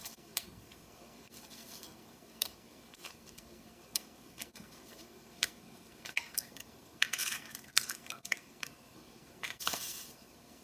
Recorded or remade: remade